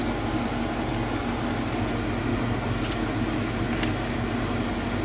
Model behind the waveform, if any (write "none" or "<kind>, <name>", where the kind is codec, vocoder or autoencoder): none